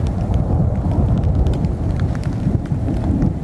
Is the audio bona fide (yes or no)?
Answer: no